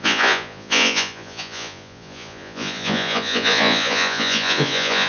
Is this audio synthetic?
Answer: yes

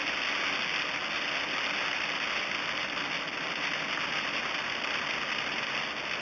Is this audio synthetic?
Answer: no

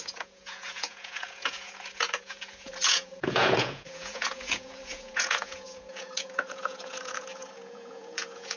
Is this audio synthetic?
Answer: yes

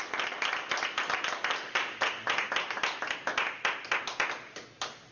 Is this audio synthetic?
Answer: no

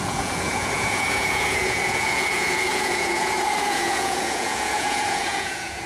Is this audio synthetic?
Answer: yes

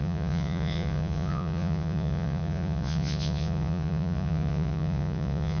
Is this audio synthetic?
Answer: yes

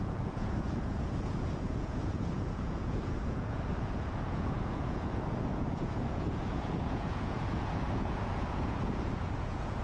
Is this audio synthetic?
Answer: yes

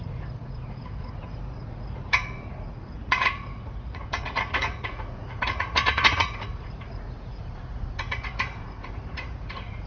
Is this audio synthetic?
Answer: yes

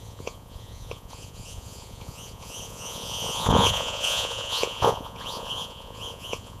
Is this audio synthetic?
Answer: yes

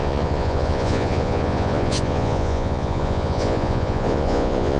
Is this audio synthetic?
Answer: yes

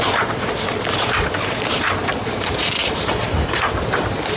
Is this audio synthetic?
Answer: no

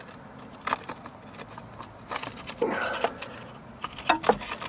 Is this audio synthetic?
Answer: no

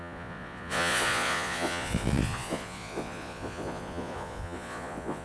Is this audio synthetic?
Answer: yes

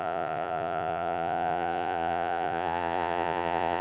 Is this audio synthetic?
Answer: yes